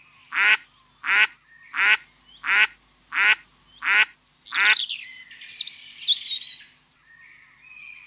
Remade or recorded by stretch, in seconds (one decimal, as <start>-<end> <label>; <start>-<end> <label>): 0.0-8.1 recorded